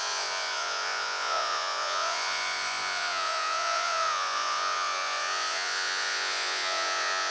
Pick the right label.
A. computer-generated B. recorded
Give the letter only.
A